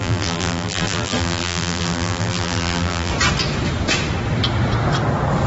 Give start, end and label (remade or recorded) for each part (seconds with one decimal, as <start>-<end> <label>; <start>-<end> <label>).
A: 0.0-3.1 remade; 3.1-5.5 recorded